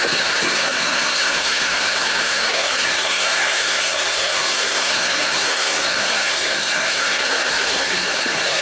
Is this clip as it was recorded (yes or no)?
no